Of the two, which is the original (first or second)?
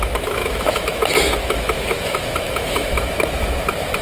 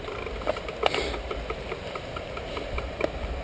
second